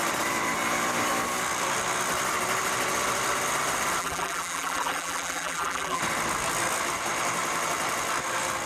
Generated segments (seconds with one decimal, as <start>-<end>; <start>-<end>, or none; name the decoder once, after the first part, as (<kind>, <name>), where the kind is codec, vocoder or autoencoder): 4.0-6.0 (vocoder, BigVGAN v2)